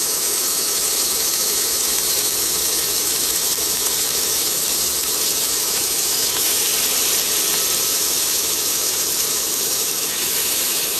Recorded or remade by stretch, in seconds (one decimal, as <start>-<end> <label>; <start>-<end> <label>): 0.0-6.7 remade; 6.7-7.8 recorded; 7.8-11.0 remade